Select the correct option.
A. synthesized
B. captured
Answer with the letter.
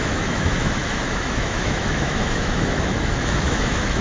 A